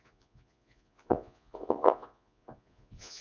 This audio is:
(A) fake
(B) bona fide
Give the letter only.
A